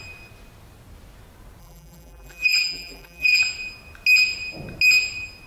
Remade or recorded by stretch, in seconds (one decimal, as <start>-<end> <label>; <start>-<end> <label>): 0.0-1.6 recorded; 1.6-3.4 remade; 3.4-5.5 recorded